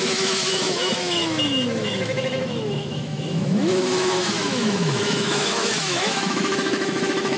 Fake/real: fake